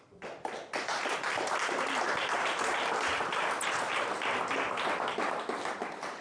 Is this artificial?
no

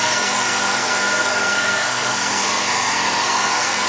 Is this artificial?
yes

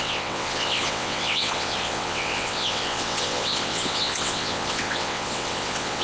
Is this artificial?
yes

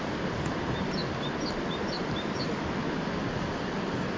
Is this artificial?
no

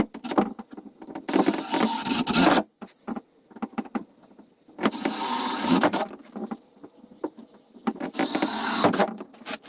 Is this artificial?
no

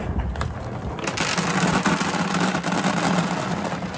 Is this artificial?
no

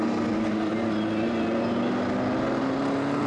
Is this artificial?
no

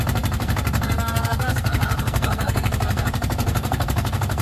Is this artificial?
yes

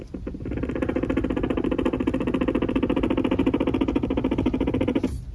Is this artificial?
no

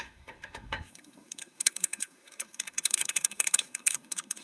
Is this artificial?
yes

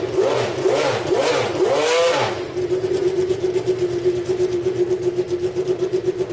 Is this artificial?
no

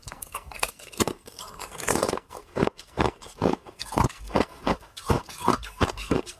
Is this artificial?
yes